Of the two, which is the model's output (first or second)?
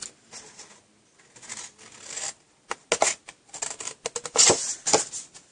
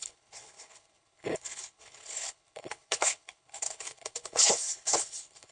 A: second